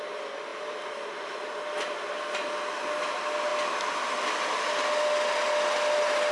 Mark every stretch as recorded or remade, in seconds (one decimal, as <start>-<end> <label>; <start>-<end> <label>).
0.0-6.3 recorded